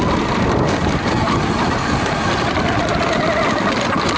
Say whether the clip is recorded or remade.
recorded